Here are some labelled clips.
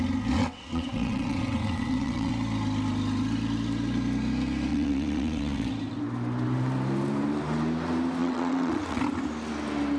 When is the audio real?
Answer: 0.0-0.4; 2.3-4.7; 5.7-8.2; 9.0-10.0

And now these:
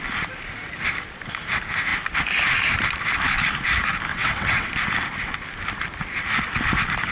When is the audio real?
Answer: 0.0-4.1; 4.7-7.1

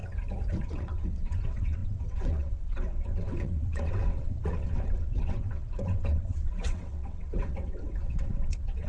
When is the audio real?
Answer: 0.0-0.6

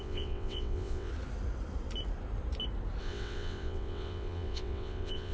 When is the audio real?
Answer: 1.1-3.0

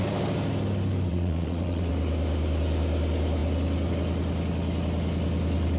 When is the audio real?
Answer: 0.0-1.1; 1.9-5.8

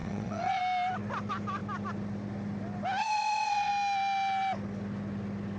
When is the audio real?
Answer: 0.6-3.0; 3.7-5.6

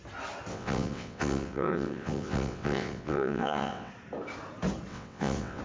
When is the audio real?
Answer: 0.0-0.5; 3.9-4.9

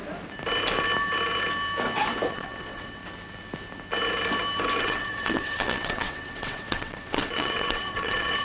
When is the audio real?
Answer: 0.0-2.3; 3.0-4.8